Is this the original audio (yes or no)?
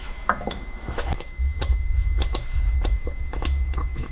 no